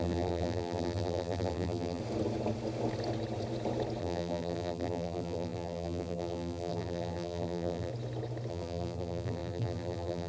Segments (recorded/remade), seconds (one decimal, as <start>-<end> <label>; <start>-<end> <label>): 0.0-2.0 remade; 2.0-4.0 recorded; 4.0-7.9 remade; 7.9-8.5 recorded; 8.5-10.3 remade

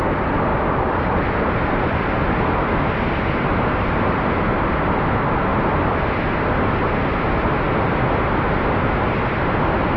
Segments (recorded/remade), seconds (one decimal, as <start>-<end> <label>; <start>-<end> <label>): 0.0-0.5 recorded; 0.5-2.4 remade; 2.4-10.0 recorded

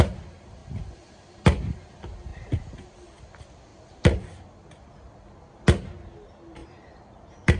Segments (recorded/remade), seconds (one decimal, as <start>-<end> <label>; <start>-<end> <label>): 0.0-0.6 recorded; 0.6-1.4 remade; 1.4-2.3 recorded; 2.3-2.9 remade; 2.9-3.7 recorded; 3.7-4.5 remade; 4.5-6.6 recorded; 6.6-7.6 remade